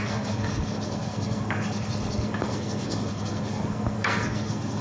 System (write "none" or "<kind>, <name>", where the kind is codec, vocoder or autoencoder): codec, SNAC